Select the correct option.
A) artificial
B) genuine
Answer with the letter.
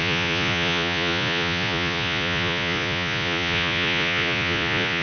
A